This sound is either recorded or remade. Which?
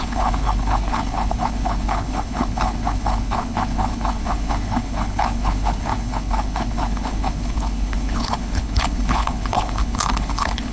remade